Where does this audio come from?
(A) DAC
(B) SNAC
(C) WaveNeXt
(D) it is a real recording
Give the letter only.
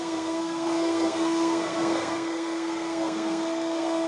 B